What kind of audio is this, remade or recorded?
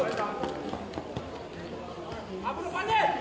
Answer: recorded